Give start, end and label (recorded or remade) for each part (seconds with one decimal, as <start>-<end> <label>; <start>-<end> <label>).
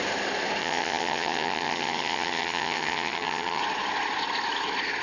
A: 0.0-0.6 recorded; 0.6-3.6 remade; 3.6-5.0 recorded